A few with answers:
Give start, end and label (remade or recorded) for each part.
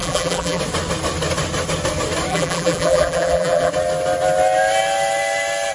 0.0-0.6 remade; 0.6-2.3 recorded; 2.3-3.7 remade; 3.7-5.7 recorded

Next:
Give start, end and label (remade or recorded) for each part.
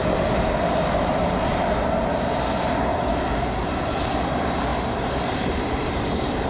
0.0-2.9 recorded; 2.9-3.7 remade; 3.7-4.7 recorded; 4.7-6.5 remade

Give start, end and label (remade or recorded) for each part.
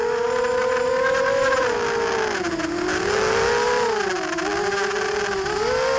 0.0-0.9 remade; 0.9-6.0 recorded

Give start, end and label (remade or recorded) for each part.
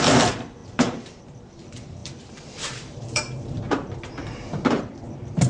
0.0-0.6 recorded; 0.6-1.2 remade; 1.2-2.0 recorded; 2.0-5.5 remade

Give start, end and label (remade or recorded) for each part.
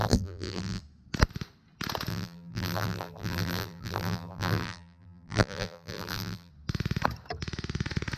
0.0-0.8 remade; 0.8-2.1 recorded; 2.1-6.5 remade; 6.5-8.2 recorded